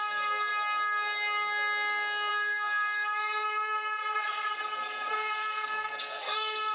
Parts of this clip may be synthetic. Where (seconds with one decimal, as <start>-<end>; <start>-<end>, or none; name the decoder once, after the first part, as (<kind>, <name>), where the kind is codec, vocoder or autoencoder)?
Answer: 0.0-0.5 (codec, SNAC); 2.3-4.0; 4.5-6.7